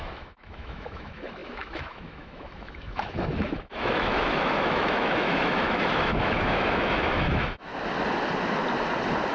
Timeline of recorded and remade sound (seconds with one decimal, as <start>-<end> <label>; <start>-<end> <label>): 0.0-7.7 remade; 7.7-9.3 recorded